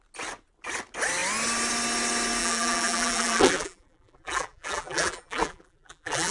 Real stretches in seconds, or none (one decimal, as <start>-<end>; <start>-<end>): 0.0-2.4